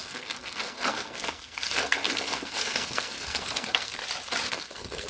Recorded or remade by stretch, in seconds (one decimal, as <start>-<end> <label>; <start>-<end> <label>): 0.0-4.0 remade; 4.0-4.5 recorded; 4.5-5.1 remade